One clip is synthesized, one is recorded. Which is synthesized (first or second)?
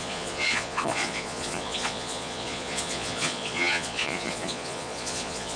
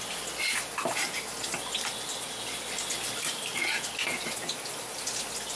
first